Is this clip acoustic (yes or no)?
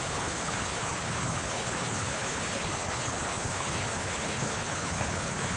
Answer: no